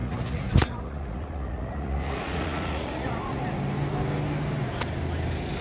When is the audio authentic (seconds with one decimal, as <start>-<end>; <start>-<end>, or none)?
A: 3.4-5.6